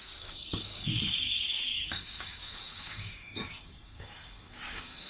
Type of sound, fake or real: fake